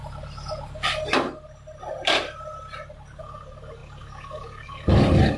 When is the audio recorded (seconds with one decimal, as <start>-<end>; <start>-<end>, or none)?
0.0-3.2